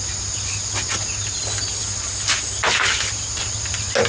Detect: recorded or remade recorded